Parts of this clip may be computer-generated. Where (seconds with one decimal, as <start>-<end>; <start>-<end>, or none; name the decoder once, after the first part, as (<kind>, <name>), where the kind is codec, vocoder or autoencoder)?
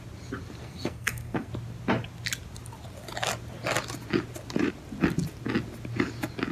0.6-1.5 (codec, SNAC)